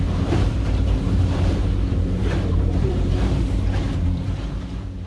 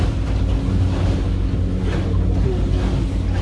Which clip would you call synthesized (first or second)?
first